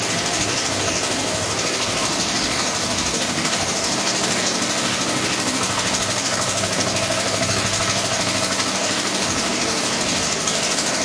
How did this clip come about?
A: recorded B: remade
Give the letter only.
B